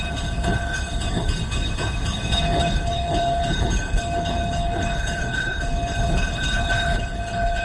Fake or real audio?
fake